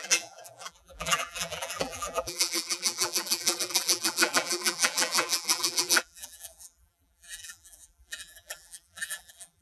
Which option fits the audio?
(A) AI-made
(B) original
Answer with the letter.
A